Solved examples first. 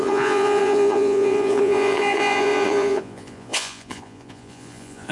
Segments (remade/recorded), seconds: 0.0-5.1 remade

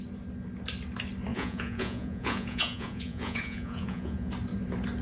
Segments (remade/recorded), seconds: 0.0-1.3 recorded; 1.3-4.3 remade; 4.3-5.0 recorded